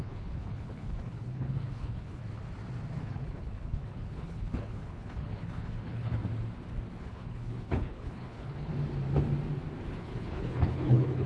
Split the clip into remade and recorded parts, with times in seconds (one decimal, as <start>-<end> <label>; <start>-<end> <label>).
0.0-2.2 remade; 2.2-3.0 recorded; 3.0-6.2 remade; 6.2-7.0 recorded; 7.0-8.7 remade; 8.7-10.0 recorded; 10.0-11.3 remade